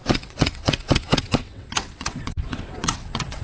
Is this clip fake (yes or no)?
yes